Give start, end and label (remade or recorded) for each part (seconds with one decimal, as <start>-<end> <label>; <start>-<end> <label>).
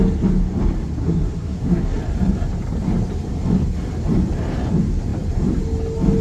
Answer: 0.0-1.0 recorded; 1.0-2.0 remade; 2.0-6.2 recorded